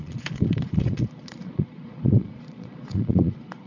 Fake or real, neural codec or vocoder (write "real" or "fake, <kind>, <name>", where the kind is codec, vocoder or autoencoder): fake, vocoder, Vocos